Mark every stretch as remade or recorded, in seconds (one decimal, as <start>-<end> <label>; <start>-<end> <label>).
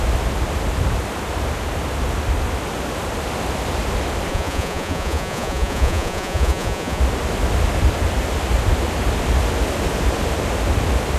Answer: 0.0-4.3 recorded; 4.3-7.0 remade; 7.0-11.2 recorded